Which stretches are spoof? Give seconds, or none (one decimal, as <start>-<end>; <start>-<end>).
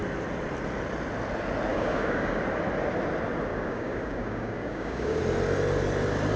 1.7-2.4; 3.5-5.2